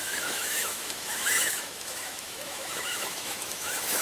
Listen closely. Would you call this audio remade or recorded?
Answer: remade